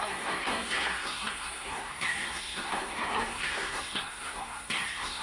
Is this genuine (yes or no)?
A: no